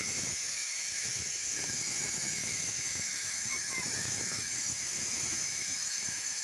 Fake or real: fake